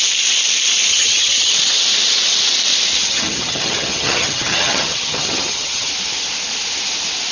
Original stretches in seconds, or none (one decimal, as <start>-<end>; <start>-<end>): 0.0-0.9; 1.5-3.0; 5.9-7.3